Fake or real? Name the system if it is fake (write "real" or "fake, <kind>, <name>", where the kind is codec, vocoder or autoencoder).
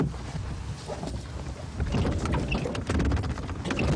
real